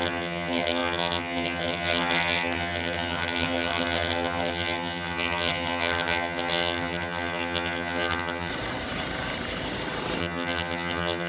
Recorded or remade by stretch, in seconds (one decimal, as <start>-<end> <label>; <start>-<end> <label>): 0.0-8.5 remade; 8.5-10.2 recorded; 10.2-11.3 remade